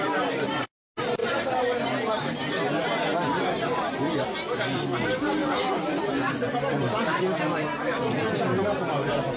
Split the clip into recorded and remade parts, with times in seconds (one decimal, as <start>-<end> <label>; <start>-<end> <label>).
0.0-1.2 recorded; 1.2-2.5 remade; 2.5-9.4 recorded